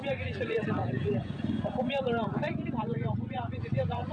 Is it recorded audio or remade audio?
remade